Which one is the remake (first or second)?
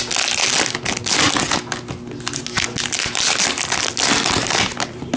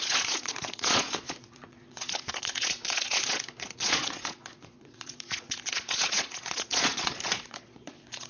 second